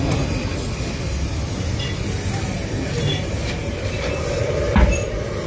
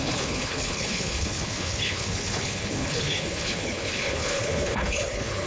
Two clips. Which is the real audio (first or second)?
first